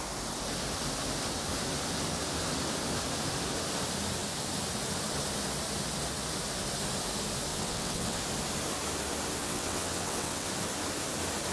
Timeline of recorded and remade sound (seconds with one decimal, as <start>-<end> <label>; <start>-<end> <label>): 0.0-7.5 recorded; 7.5-8.2 remade; 8.2-9.4 recorded; 9.4-10.5 remade; 10.5-11.5 recorded